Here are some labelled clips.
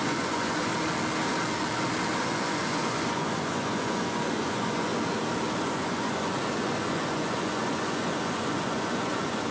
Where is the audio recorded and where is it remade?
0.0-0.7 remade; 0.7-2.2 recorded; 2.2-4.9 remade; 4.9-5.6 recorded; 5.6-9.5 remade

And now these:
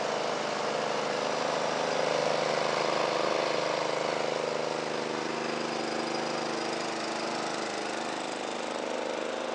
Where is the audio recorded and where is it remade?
0.0-9.5 recorded

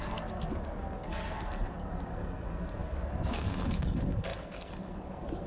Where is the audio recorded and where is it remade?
0.0-5.5 remade

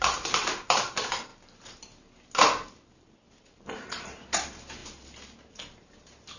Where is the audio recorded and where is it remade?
0.0-1.3 remade; 1.3-3.4 recorded; 3.4-4.8 remade; 4.8-5.5 recorded; 5.5-6.4 remade

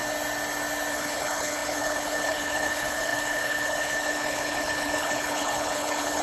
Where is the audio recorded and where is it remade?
0.0-0.9 recorded; 0.9-6.2 remade

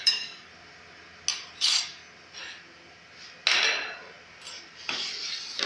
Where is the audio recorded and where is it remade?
0.0-0.5 remade; 0.5-1.6 recorded; 1.6-2.0 remade; 2.0-5.7 recorded

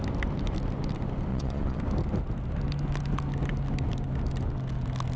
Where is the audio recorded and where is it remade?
0.0-1.3 recorded; 1.3-1.8 remade; 1.8-5.2 recorded

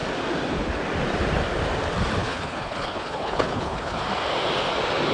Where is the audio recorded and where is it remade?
0.0-2.2 recorded; 2.2-4.0 remade; 4.0-5.1 recorded